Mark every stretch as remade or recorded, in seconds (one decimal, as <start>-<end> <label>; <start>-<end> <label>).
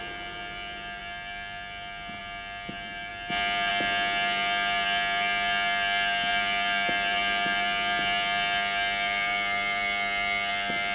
0.0-10.9 recorded